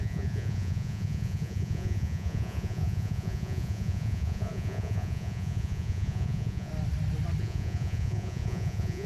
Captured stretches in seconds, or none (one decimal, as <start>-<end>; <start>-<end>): 6.7-7.4

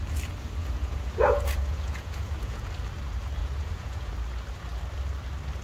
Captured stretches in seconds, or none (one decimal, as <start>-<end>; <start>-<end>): 0.0-0.6; 2.7-3.4; 4.1-5.6

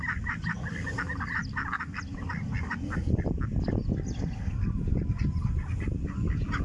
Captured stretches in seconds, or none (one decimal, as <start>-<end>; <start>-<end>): 0.0-6.6

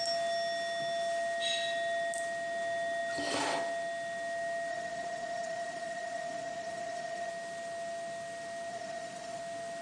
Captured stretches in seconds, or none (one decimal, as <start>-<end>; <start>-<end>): 0.0-4.7; 7.3-8.7; 9.4-9.8

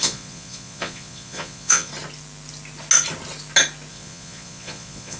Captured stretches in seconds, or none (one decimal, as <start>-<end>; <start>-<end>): 1.9-3.9

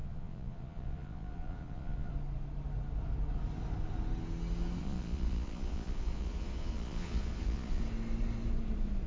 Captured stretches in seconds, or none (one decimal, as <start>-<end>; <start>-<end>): 2.1-4.8; 7.8-9.1